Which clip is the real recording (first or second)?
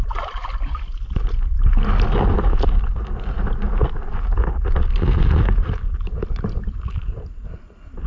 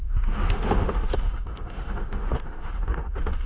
first